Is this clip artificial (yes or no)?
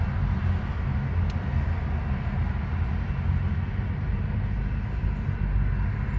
no